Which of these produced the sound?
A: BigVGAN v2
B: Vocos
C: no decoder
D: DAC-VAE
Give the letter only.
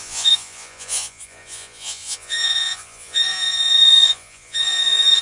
B